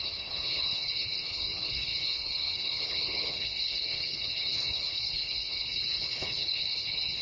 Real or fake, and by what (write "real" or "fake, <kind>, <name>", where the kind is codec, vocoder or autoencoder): fake, codec, HILCodec